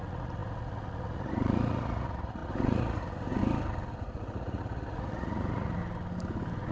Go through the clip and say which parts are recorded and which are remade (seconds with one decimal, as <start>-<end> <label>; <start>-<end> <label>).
0.0-3.4 remade; 3.4-4.0 recorded; 4.0-5.8 remade; 5.8-6.7 recorded

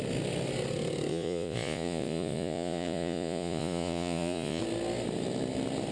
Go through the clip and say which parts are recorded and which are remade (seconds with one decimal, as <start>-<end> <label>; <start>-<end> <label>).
0.0-1.1 recorded; 1.1-4.6 remade; 4.6-5.9 recorded

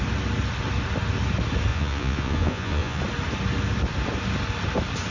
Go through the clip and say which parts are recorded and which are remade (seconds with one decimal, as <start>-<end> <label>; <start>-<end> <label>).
0.0-1.7 recorded; 1.7-3.0 remade; 3.0-5.1 recorded

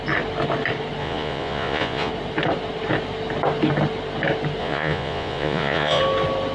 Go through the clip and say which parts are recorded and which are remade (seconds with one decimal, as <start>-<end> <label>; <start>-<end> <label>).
0.0-1.0 recorded; 1.0-2.1 remade; 2.1-4.6 recorded; 4.6-6.0 remade; 6.0-6.5 recorded

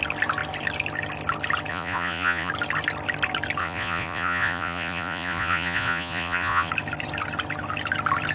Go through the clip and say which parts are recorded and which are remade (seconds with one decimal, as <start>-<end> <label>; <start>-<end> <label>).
0.0-1.7 recorded; 1.7-2.5 remade; 2.5-3.6 recorded; 3.6-6.7 remade; 6.7-8.3 recorded

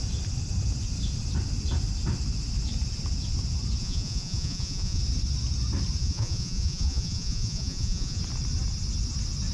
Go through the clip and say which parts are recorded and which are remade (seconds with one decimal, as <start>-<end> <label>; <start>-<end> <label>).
0.0-3.8 recorded; 3.8-5.0 remade; 5.0-6.0 recorded; 6.0-8.2 remade; 8.2-9.5 recorded